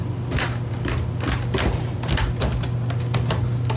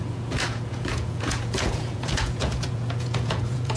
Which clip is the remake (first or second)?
second